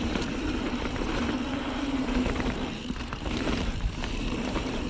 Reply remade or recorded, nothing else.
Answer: remade